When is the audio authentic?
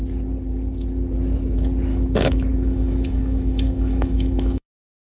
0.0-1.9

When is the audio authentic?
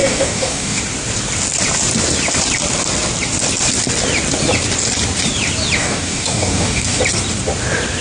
0.8-5.8; 7.0-8.0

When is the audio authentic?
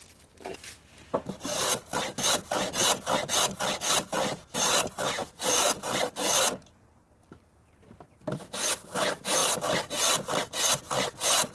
0.0-5.2; 5.8-11.5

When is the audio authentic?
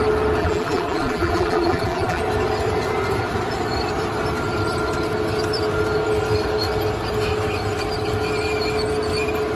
0.0-0.4; 2.2-9.6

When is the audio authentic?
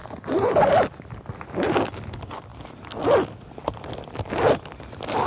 1.3-2.5; 4.2-5.3